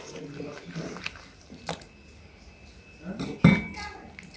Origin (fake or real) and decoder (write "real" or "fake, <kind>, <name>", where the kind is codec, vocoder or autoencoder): real